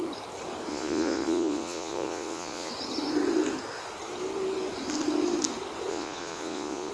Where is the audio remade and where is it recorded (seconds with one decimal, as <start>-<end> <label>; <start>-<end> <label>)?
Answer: 0.0-0.7 recorded; 0.7-2.7 remade; 2.7-5.9 recorded; 5.9-6.9 remade